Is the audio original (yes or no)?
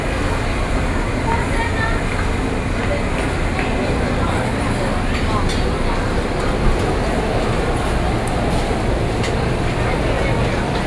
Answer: yes